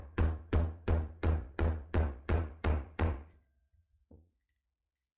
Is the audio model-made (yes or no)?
yes